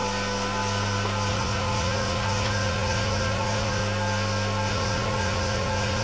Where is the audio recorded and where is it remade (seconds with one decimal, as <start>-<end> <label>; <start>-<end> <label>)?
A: 0.0-1.3 recorded; 1.3-3.8 remade; 3.8-4.7 recorded; 4.7-6.0 remade